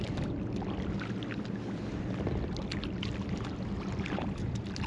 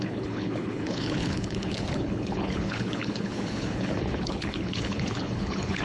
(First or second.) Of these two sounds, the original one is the first